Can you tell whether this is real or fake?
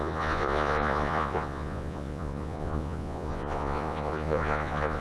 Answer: fake